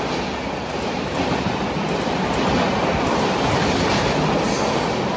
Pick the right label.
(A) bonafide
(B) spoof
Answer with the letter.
A